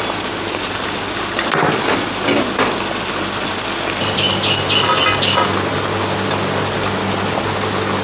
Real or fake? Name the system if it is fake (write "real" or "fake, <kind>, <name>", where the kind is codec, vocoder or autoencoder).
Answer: real